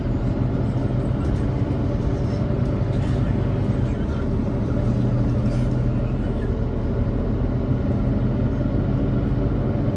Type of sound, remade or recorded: recorded